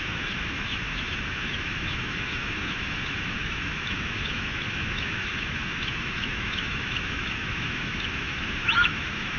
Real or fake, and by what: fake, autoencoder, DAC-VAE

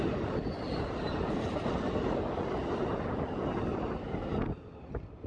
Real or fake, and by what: real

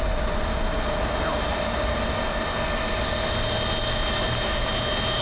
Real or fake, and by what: real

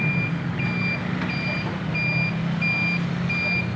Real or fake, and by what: real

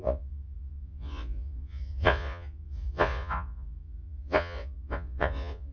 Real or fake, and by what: fake, vocoder, Vocos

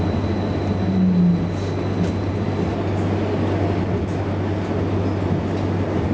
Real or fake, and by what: real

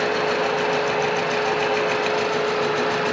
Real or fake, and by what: real